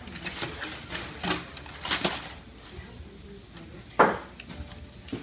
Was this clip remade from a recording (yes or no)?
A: no